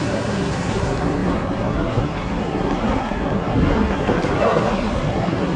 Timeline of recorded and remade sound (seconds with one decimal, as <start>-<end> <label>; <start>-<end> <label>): 0.0-5.6 remade